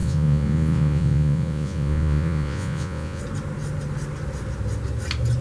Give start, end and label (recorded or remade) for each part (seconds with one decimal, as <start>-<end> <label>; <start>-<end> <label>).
0.0-3.2 remade; 3.2-5.4 recorded